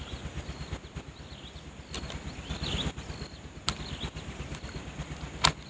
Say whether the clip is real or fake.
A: real